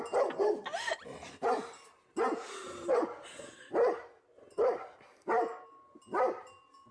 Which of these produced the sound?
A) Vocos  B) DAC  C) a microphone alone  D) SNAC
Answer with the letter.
C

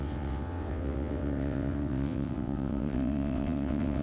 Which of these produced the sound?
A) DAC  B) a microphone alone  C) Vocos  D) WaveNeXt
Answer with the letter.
D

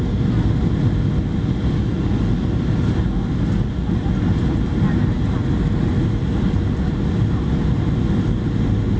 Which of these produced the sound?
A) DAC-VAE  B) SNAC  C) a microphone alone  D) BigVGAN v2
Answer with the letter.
C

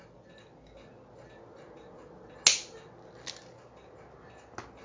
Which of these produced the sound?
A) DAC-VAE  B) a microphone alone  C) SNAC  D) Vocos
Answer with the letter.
B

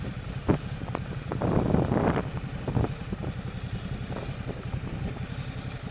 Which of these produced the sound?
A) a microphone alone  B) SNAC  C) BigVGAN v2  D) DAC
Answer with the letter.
A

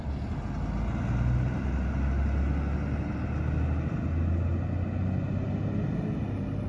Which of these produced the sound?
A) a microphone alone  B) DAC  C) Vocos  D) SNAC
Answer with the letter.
A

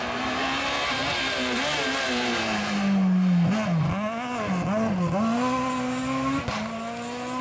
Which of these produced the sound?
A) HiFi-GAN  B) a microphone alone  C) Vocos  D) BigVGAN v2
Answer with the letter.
B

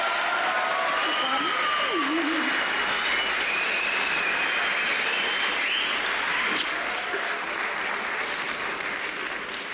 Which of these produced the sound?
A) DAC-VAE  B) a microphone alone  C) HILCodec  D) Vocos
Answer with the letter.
B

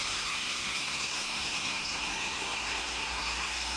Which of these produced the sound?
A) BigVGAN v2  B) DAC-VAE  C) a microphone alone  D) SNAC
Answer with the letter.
D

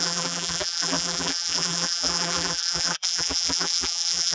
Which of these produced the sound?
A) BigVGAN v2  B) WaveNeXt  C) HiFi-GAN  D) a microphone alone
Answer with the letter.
A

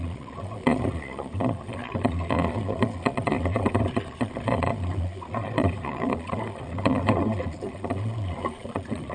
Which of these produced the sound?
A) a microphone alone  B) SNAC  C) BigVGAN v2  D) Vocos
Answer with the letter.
D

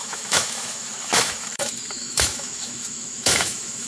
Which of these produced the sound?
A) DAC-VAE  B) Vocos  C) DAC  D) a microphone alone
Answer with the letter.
A